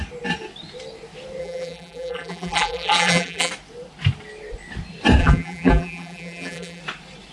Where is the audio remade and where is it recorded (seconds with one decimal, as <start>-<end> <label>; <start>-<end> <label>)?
0.0-1.4 recorded; 1.4-3.5 remade; 3.5-5.2 recorded; 5.2-6.8 remade; 6.8-7.3 recorded